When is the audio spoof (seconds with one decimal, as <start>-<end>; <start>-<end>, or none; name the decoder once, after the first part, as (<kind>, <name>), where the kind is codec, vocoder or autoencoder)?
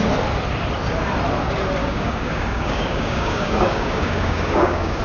1.8-5.0 (codec, DAC)